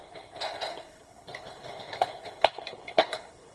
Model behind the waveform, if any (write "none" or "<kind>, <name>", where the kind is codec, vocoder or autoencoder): codec, HILCodec